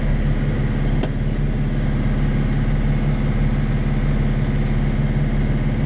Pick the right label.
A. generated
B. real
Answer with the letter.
B